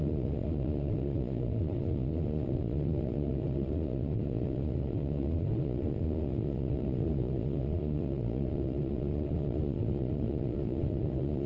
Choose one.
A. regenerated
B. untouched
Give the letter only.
A